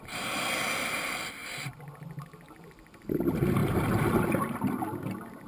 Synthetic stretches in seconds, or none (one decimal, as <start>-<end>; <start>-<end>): none